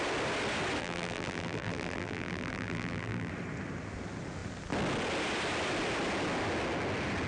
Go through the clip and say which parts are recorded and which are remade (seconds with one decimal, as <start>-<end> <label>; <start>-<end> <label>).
0.0-0.8 recorded; 0.8-3.3 remade; 3.3-7.3 recorded